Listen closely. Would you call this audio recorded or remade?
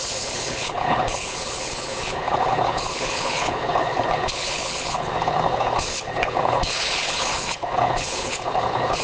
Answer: remade